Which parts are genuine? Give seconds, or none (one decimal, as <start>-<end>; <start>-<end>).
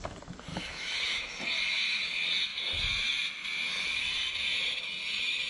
0.0-0.5; 1.4-5.5